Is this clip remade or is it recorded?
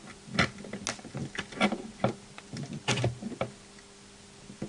recorded